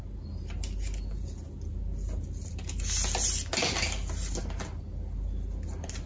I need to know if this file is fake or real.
real